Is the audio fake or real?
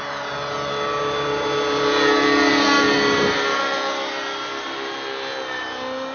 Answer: real